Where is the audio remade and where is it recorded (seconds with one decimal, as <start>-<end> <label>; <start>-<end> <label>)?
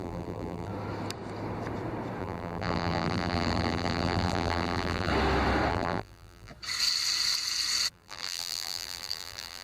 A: 0.0-0.7 remade; 0.7-2.2 recorded; 2.2-5.1 remade; 5.1-5.7 recorded; 5.7-6.5 remade; 6.5-7.9 recorded; 7.9-9.6 remade